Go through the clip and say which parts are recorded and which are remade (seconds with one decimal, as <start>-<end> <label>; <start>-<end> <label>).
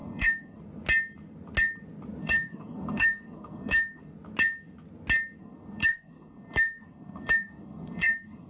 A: 0.0-0.6 remade; 0.6-2.2 recorded; 2.2-4.0 remade; 4.0-5.4 recorded; 5.4-8.5 remade